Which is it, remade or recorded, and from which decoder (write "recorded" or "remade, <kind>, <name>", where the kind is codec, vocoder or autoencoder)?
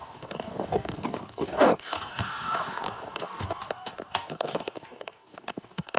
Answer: remade, codec, DAC